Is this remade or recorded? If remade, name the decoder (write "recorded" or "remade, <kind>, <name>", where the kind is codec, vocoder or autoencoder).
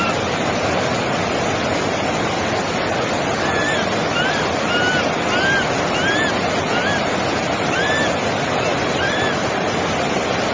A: recorded